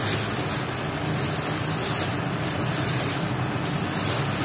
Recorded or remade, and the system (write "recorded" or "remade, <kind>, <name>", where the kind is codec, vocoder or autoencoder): recorded